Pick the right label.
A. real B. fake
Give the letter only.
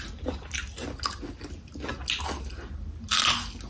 A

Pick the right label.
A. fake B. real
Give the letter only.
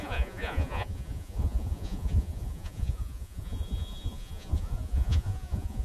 A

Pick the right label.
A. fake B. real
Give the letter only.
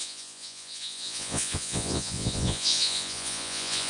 A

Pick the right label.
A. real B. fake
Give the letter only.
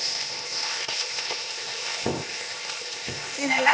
B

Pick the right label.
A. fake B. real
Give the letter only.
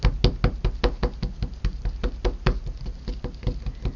B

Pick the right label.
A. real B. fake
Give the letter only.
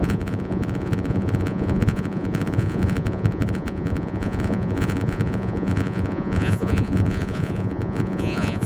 B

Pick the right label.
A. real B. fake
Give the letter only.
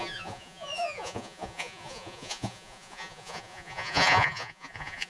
B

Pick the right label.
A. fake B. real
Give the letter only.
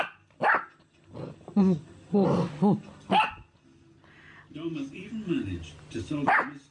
B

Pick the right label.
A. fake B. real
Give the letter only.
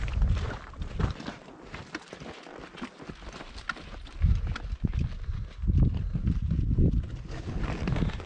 B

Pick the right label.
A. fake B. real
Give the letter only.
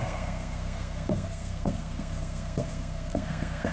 A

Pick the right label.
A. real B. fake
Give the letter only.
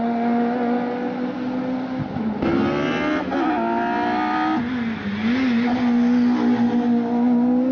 A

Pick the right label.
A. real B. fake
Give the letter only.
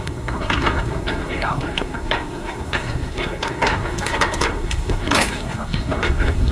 B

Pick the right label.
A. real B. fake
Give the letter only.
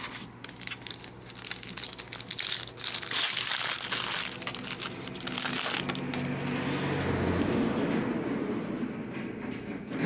A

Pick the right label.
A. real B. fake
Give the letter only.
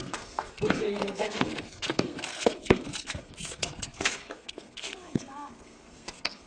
B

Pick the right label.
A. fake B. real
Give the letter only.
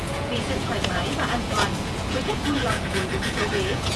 A